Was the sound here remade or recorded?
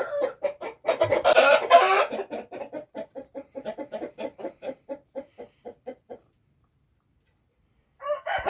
remade